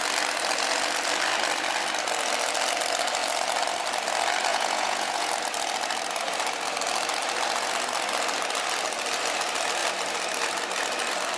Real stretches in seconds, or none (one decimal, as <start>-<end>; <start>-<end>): 0.0-4.5; 5.3-11.4